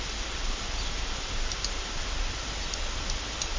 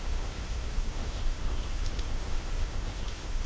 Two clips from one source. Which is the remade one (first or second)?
second